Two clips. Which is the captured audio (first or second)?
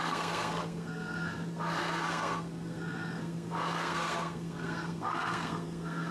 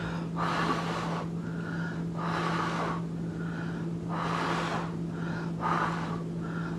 second